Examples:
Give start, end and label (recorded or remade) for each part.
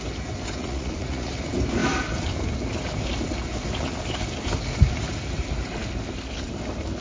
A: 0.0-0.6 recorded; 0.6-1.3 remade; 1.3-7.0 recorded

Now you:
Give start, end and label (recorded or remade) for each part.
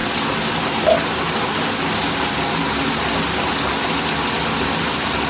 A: 0.0-5.3 recorded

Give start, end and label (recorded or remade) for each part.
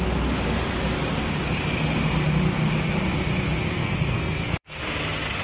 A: 0.0-3.7 recorded; 3.7-4.8 remade; 4.8-5.4 recorded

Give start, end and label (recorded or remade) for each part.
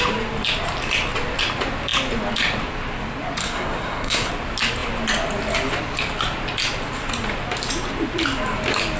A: 0.0-3.4 recorded; 3.4-4.3 remade; 4.3-9.0 recorded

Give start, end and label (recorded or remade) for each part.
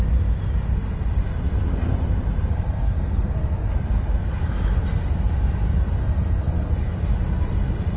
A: 0.0-2.5 recorded; 2.5-3.7 remade; 3.7-6.0 recorded; 6.0-6.7 remade; 6.7-8.0 recorded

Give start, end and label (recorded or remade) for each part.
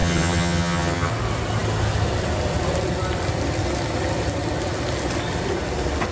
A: 0.0-1.1 remade; 1.1-6.1 recorded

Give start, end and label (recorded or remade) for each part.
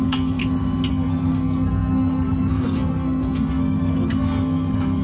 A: 0.0-0.4 remade; 0.4-0.9 recorded; 0.9-5.0 remade